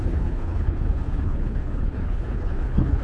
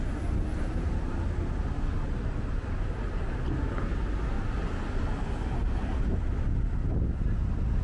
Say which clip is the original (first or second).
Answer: second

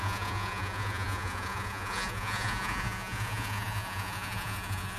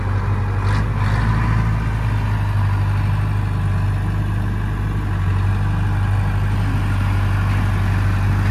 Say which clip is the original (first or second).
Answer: second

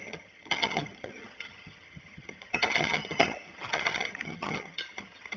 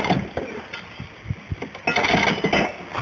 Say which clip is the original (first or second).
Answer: second